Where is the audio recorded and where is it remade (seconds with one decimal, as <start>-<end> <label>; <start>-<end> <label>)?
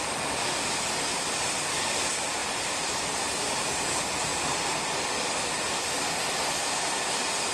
0.0-2.4 recorded; 2.4-3.4 remade; 3.4-7.5 recorded